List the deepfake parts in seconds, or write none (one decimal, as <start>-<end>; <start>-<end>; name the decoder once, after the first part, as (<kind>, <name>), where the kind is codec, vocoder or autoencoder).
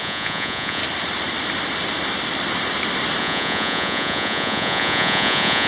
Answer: 0.0-0.8 (vocoder, Vocos); 3.2-5.7